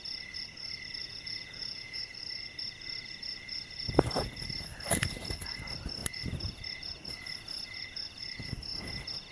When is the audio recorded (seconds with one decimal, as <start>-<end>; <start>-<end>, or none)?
0.0-1.0; 2.0-9.3